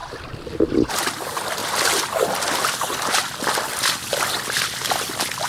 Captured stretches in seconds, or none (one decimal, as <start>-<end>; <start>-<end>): 0.0-5.5